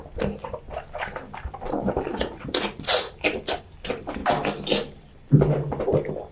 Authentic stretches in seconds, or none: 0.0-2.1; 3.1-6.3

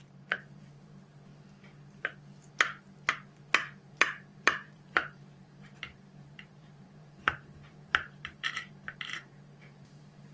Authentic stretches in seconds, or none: 1.3-3.9

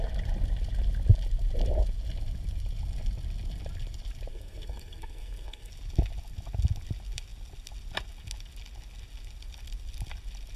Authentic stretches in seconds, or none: 0.0-4.3; 5.7-10.6

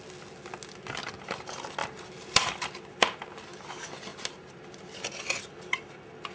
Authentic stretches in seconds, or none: 0.0-1.8; 3.6-4.1; 4.6-6.3

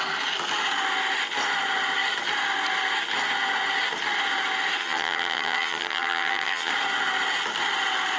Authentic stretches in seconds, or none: 0.0-4.8; 6.7-8.2

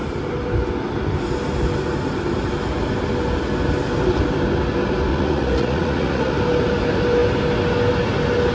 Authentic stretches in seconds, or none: 0.0-5.1; 6.3-8.5